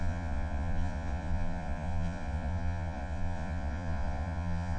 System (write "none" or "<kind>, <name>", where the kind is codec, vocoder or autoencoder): vocoder, Vocos